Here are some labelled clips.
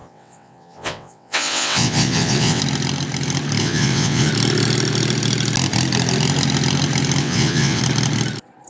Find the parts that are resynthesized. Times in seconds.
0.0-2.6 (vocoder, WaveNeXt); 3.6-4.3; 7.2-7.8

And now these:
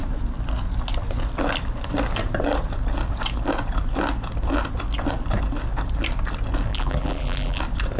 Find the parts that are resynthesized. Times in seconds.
6.7-7.6 (vocoder, BigVGAN v2)

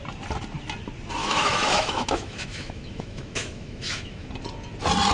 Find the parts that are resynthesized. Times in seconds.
1.2-4.3 (autoencoder, DAC-VAE)

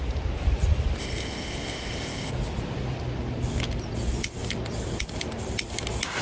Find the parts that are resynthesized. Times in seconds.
1.0-2.3 (codec, ZipCodec)

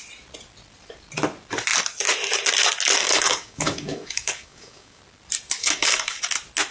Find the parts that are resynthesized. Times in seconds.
3.0-5.0 (codec, DAC); 5.6-6.2

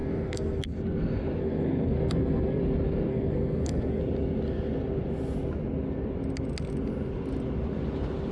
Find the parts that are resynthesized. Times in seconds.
0.0-0.6 (codec, SNAC); 1.4-2.6; 3.1-4.0